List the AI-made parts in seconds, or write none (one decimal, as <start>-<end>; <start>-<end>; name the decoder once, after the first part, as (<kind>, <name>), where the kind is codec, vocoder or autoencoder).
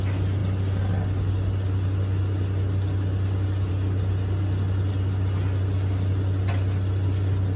none